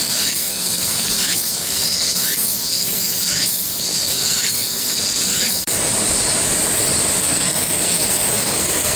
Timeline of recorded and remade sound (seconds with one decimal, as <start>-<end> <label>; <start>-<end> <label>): 0.0-5.9 remade; 5.9-7.2 recorded; 7.2-9.0 remade